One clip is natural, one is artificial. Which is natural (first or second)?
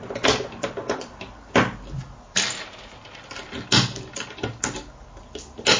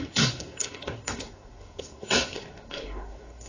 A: first